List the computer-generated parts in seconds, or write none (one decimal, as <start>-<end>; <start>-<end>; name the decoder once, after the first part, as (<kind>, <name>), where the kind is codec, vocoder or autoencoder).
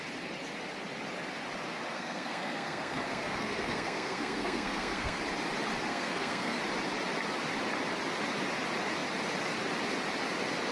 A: 1.9-5.2 (codec, SNAC); 5.9-6.6